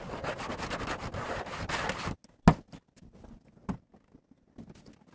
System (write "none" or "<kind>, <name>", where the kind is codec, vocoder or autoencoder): none